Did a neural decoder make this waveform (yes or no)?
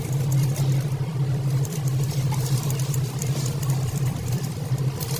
no